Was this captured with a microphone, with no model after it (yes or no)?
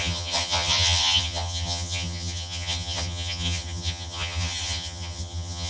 no